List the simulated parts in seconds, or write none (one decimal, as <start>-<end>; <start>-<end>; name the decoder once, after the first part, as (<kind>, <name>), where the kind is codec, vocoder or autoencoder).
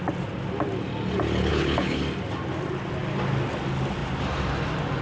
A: 1.5-2.0 (codec, HILCodec)